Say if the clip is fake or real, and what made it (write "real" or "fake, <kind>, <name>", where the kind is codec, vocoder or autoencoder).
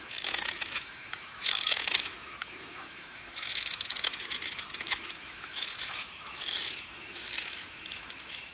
fake, autoencoder, DAC-VAE